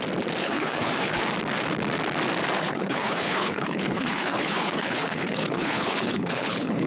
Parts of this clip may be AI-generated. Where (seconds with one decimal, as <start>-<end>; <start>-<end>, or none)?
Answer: 0.4-1.2; 2.6-6.9